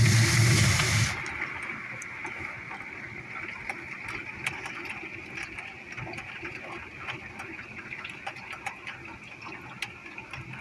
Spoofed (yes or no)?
no